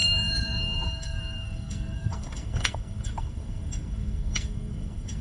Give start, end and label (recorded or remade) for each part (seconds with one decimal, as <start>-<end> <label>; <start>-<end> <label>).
0.0-5.2 remade